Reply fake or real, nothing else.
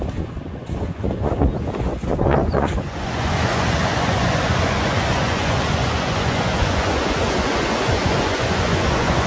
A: fake